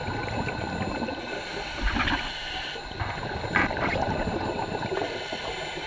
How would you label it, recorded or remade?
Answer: recorded